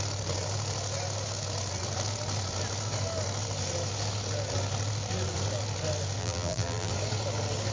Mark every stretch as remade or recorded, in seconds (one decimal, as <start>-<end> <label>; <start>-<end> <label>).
0.0-6.2 recorded; 6.2-6.9 remade; 6.9-7.7 recorded